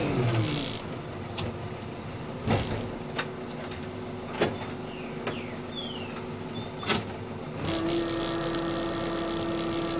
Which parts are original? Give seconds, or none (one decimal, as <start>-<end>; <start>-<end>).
0.0-10.0